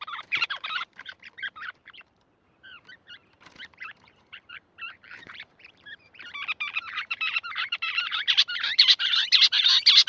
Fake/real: fake